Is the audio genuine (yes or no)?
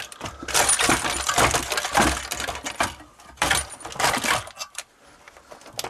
yes